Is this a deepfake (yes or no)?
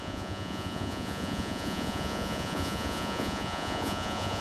yes